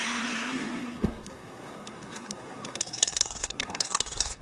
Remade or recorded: remade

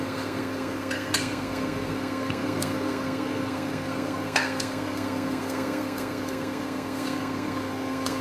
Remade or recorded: remade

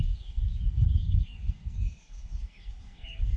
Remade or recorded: remade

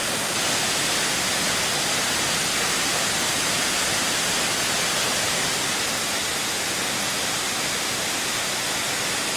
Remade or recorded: recorded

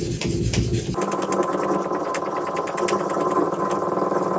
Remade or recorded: recorded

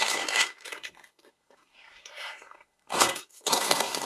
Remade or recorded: remade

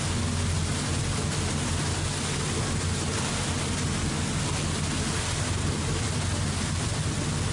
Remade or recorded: recorded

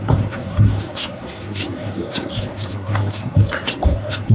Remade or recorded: remade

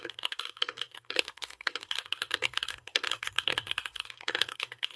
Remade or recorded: remade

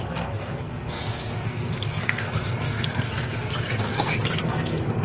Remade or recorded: remade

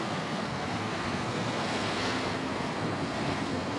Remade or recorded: remade